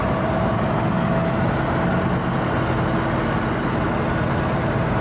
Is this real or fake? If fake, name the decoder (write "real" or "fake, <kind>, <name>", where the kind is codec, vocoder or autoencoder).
real